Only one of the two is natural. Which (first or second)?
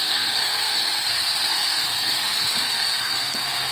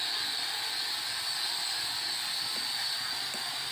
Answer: second